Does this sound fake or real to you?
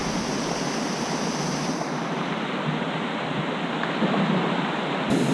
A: real